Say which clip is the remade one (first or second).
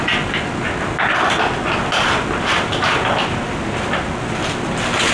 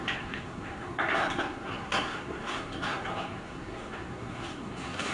second